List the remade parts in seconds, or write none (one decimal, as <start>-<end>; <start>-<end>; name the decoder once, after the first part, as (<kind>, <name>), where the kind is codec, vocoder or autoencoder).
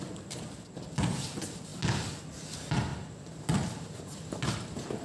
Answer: none